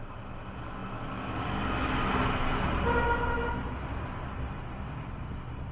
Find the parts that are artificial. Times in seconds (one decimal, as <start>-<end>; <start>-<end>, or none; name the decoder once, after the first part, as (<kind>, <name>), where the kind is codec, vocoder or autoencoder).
none